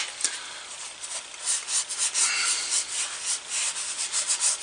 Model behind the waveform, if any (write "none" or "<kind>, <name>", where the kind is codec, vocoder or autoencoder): none